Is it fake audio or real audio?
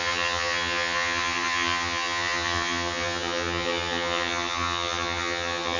fake